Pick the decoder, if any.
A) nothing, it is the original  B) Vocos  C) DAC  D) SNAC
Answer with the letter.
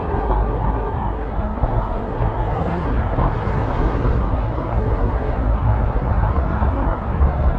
D